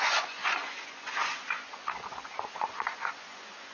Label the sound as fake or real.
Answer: fake